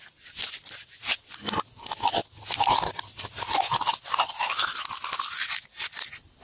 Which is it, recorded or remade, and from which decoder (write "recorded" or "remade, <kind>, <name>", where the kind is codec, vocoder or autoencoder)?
recorded